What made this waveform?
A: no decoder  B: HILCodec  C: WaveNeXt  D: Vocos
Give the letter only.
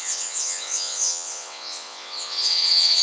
C